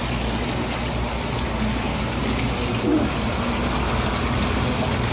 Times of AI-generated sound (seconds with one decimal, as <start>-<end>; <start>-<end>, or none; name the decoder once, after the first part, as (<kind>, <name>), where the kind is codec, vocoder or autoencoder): none